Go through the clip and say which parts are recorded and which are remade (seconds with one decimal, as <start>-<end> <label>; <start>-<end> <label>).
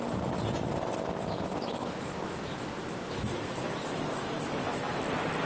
0.0-1.7 recorded; 1.7-5.0 remade; 5.0-5.5 recorded